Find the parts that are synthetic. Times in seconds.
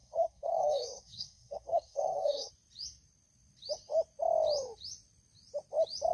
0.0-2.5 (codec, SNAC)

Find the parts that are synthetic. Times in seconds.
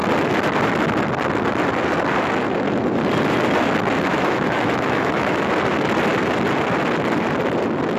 4.1-5.5 (autoencoder, DAC-VAE)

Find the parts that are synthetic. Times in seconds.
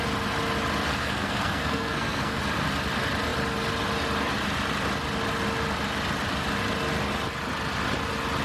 0.9-2.4 (codec, SNAC)